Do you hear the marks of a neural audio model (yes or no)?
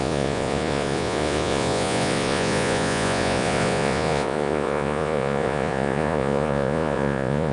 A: yes